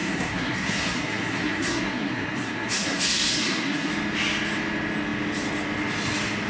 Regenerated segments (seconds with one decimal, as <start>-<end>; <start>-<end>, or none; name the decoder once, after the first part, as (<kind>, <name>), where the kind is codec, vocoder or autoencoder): 0.0-3.9 (codec, SNAC)